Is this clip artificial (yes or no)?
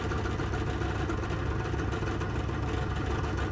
no